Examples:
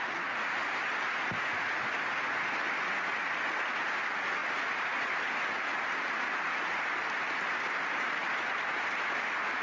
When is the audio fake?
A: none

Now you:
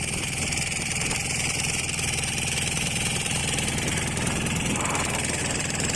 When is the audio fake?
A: 0.0-3.4 (vocoder, BigVGAN v2); 5.4-6.0

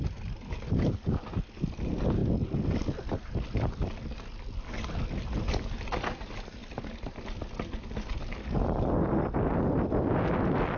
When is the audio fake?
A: none

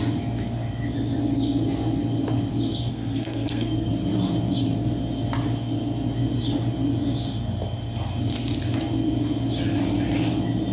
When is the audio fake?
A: 2.9-3.9 (codec, SNAC)

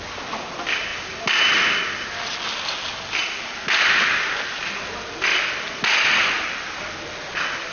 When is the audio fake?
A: none